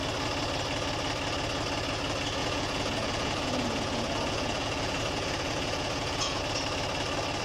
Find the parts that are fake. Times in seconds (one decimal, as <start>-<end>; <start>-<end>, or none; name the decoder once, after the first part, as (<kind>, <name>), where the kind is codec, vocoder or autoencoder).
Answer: 2.4-6.4 (vocoder, Vocos)